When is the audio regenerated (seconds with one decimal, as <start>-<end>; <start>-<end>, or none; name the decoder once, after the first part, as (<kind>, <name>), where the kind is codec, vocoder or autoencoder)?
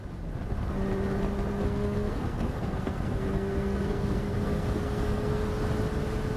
1.6-5.4 (codec, SNAC)